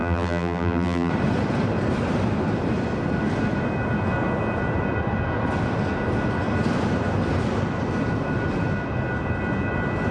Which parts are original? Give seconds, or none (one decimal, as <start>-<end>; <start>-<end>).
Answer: 1.1-10.1